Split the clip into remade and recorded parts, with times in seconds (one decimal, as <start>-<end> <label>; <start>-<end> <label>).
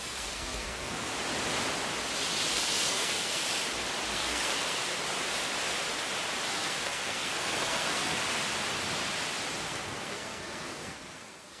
0.0-1.1 remade; 1.1-2.5 recorded; 2.5-3.4 remade; 3.4-4.1 recorded; 4.1-4.8 remade; 4.8-6.5 recorded; 6.5-8.2 remade; 8.2-9.6 recorded; 9.6-11.6 remade